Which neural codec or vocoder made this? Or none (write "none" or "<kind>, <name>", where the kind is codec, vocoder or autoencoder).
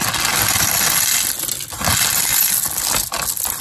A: none